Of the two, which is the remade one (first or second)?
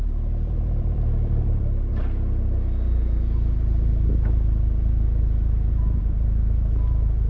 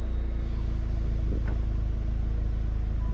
first